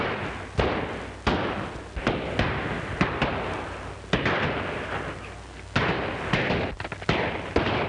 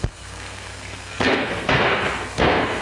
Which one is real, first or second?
first